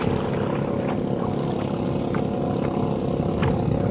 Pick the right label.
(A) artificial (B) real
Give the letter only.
B